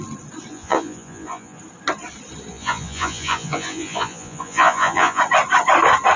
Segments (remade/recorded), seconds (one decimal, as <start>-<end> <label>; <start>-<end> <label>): 0.0-0.5 recorded; 0.5-1.6 remade; 1.6-2.5 recorded; 2.5-5.2 remade; 5.2-6.2 recorded